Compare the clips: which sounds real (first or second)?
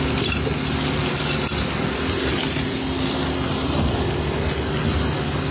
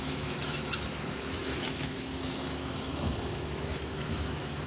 first